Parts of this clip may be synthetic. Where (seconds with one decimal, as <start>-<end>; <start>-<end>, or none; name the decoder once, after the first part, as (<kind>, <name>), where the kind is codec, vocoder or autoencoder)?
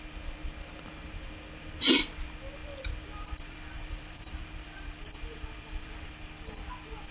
2.6-6.1 (vocoder, BigVGAN v2)